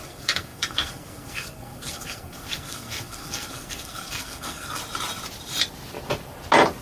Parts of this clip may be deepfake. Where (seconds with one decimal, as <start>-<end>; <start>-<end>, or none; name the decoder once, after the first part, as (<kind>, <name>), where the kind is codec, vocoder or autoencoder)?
0.0-4.8 (codec, SNAC)